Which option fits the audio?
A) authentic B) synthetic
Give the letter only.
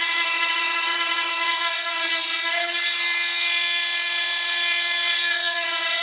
B